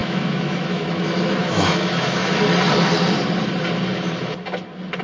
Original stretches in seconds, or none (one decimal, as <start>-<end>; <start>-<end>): 2.4-5.0